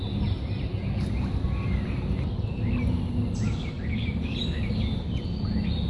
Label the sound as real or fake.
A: real